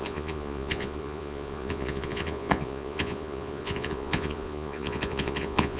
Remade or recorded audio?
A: remade